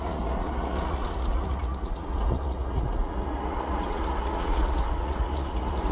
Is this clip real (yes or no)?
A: no